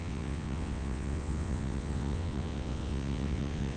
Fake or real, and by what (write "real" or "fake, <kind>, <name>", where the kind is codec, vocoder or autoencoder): fake, vocoder, WaveNeXt